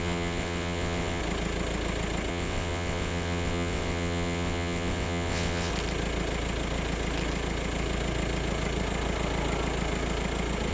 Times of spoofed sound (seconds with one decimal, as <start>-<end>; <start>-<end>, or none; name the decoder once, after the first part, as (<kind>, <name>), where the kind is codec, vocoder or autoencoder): 0.0-1.2 (vocoder, WaveNeXt); 2.3-5.7